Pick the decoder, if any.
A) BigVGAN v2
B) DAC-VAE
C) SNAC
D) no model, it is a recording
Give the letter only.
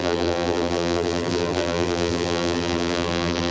A